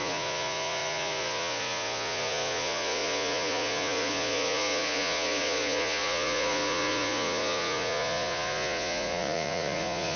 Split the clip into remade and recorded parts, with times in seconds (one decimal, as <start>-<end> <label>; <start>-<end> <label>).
0.0-10.2 remade